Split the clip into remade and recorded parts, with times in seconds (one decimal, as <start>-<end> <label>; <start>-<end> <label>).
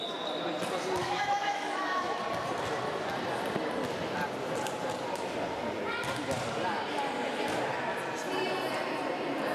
0.0-1.0 recorded; 1.0-2.2 remade; 2.2-9.5 recorded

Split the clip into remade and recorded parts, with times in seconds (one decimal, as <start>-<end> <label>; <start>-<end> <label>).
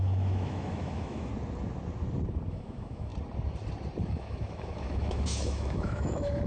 0.0-1.3 remade; 1.3-2.5 recorded; 2.5-3.1 remade; 3.1-4.0 recorded; 4.0-6.5 remade